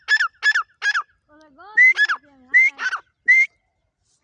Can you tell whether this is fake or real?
real